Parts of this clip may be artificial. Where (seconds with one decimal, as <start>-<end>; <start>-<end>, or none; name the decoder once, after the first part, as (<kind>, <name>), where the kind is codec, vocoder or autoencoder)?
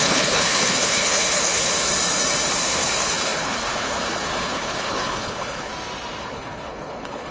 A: 0.0-1.9 (codec, HILCodec); 2.5-5.7; 6.2-7.3